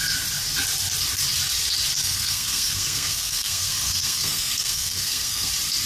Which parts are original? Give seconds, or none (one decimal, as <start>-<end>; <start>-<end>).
0.0-2.0; 5.5-5.9